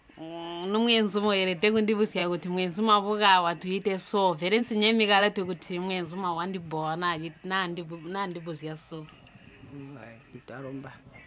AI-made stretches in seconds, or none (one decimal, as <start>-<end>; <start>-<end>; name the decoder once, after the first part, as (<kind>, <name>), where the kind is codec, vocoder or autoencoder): 8.8-10.4 (codec, SNAC)